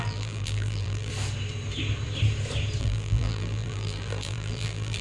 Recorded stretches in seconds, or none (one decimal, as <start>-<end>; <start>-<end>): 1.1-2.8